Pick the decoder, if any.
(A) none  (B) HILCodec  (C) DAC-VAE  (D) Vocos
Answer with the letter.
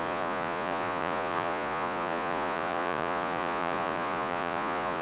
D